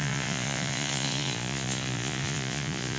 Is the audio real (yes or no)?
no